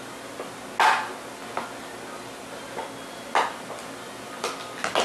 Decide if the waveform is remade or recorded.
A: recorded